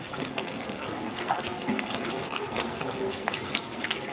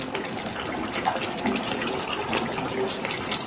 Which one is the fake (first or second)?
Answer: first